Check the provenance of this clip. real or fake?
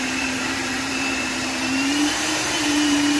fake